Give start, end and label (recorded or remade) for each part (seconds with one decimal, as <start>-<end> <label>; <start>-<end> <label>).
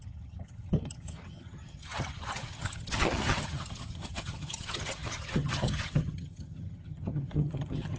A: 0.0-8.0 remade